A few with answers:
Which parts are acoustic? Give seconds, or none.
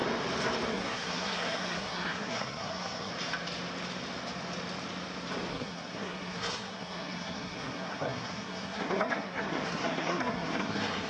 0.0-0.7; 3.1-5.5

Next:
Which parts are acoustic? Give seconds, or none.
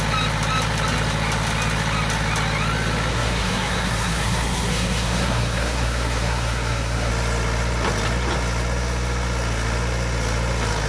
0.0-3.1; 7.1-10.9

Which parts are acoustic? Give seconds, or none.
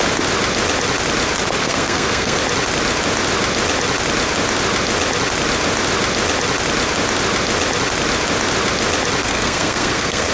0.0-1.6; 2.4-9.2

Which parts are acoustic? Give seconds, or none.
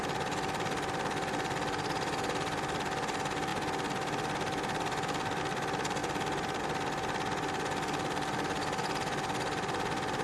0.0-10.2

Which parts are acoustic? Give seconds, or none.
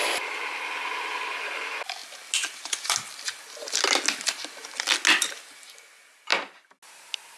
0.0-7.4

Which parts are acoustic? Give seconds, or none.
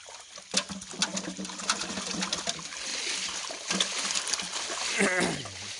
0.0-5.8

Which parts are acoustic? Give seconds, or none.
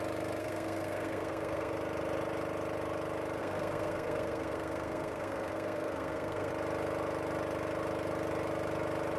0.0-0.4; 1.7-3.4; 6.5-9.2